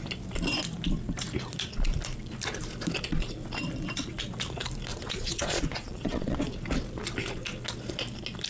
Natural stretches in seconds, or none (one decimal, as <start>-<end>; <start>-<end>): 0.0-4.9; 6.4-8.5